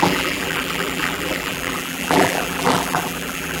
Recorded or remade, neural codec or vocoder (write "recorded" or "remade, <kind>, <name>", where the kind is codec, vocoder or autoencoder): remade, vocoder, BigVGAN v2